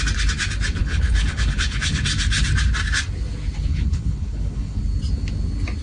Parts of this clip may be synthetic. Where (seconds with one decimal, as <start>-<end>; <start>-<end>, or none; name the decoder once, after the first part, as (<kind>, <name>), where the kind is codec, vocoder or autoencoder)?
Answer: 0.8-2.0 (codec, HILCodec); 3.7-4.8